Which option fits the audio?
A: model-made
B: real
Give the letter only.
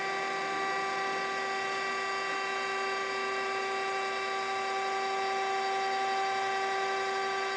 B